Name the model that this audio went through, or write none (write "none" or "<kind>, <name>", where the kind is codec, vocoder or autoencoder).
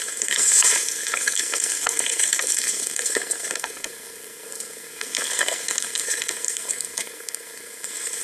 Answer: codec, SNAC